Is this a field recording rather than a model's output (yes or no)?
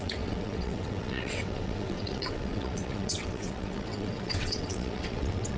no